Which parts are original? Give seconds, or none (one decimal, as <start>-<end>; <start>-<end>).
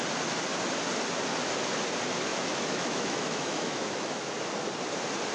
0.0-2.3; 4.3-5.3